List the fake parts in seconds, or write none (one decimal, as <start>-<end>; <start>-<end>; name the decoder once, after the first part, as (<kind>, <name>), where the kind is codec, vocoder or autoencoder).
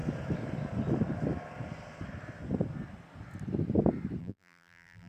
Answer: 4.2-5.1 (vocoder, BigVGAN v2)